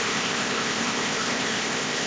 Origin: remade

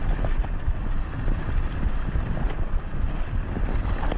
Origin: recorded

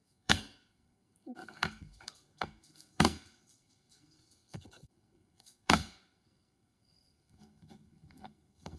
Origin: remade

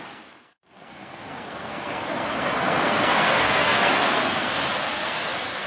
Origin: remade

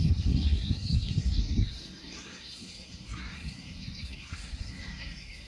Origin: remade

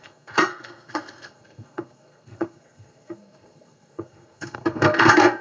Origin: remade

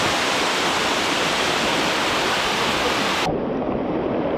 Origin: remade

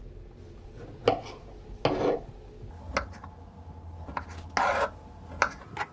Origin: recorded